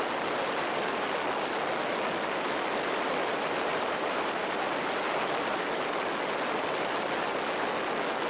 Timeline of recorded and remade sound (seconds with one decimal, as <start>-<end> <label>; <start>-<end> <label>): 0.0-3.7 recorded; 3.7-4.8 remade; 4.8-8.3 recorded